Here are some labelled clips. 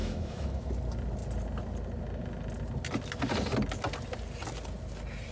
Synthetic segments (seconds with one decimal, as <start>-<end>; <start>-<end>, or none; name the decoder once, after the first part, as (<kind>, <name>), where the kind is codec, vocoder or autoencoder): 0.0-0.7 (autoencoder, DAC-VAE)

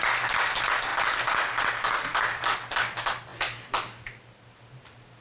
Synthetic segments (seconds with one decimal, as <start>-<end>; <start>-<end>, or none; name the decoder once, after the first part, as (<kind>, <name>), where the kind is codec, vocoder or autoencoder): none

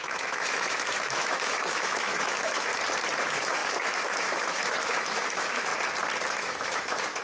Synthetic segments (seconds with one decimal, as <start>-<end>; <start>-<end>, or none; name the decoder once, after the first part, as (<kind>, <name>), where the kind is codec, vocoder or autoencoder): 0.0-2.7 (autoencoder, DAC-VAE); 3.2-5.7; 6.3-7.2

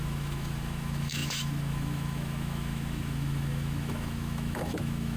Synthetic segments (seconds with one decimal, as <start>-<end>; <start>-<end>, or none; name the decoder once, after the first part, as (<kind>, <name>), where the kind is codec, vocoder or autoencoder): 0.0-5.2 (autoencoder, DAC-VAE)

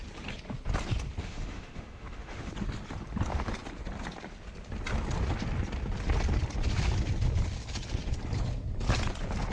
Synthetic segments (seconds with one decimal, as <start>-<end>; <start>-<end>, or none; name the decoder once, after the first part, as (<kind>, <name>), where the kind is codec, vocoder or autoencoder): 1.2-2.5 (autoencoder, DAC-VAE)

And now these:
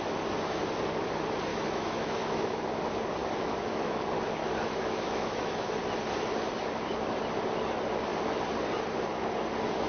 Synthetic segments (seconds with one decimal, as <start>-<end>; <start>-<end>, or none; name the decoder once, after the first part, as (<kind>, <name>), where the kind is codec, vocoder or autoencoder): 1.5-2.6 (autoencoder, DAC-VAE); 3.2-4.0; 4.4-5.8

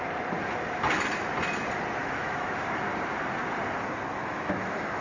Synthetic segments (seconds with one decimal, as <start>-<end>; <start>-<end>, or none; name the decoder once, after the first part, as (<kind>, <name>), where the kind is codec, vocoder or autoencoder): 2.0-2.8 (autoencoder, DAC-VAE); 4.1-5.0

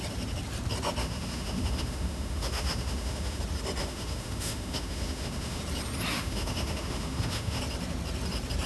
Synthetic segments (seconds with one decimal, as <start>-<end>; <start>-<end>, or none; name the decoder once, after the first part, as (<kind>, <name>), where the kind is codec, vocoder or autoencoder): 1.0-3.4 (autoencoder, DAC-VAE); 3.8-5.6; 6.1-7.6